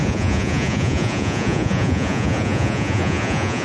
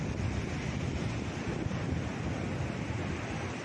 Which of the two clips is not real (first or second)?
first